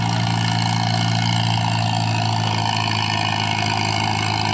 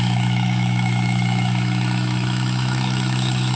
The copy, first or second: second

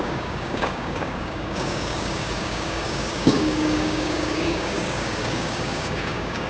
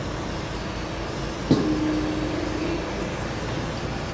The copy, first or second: first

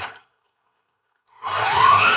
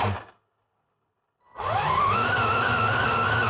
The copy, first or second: first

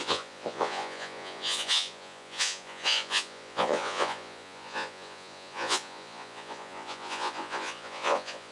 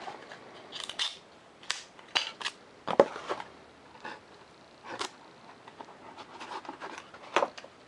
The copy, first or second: first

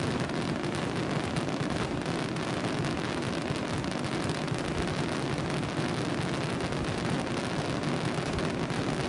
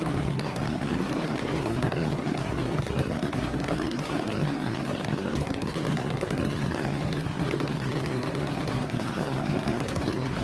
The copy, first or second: second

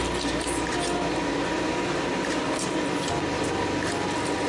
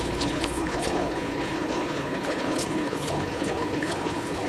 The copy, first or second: second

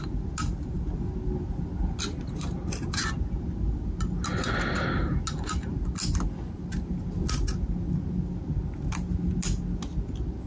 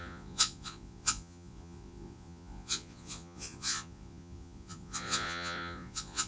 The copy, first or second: second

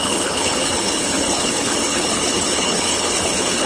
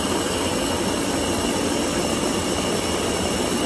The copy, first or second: first